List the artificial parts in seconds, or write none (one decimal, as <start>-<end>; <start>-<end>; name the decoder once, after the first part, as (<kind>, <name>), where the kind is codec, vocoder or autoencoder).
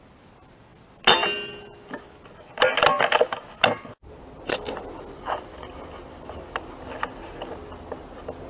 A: none